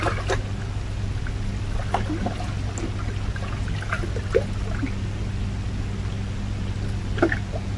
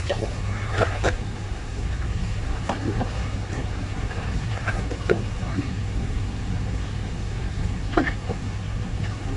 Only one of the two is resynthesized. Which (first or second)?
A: second